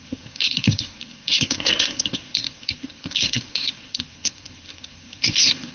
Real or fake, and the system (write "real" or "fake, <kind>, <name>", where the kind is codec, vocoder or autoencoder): fake, codec, SNAC